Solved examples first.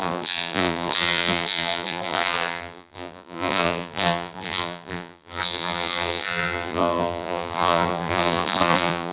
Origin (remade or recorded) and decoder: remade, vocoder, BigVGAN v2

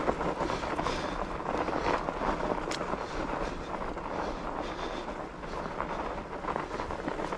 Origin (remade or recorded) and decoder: recorded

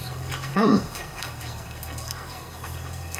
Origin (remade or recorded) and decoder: remade, codec, SNAC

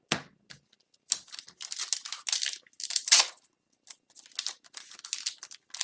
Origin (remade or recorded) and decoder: recorded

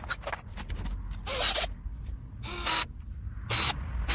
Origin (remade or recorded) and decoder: recorded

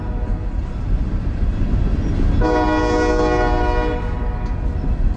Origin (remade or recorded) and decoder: recorded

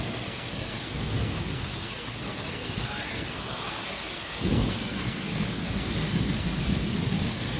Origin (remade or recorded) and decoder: remade, codec, SNAC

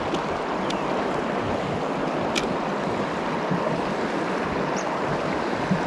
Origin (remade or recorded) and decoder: recorded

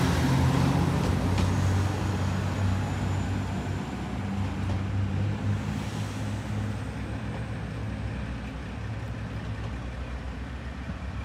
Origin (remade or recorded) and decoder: recorded